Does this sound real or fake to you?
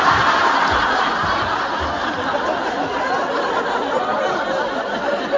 real